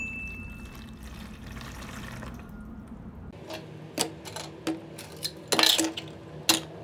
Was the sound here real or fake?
real